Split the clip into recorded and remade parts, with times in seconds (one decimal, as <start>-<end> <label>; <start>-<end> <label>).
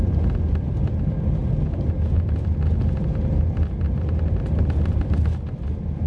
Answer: 0.0-6.1 recorded